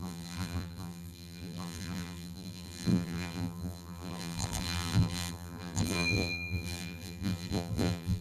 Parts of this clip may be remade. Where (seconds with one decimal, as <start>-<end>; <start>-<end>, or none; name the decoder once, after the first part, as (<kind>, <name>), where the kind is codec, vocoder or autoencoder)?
0.0-8.2 (vocoder, BigVGAN v2)